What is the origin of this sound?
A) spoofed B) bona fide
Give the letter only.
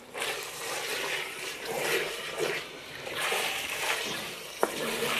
A